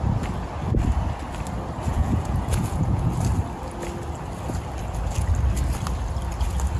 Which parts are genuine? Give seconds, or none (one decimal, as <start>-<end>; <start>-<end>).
0.0-1.9; 3.1-6.8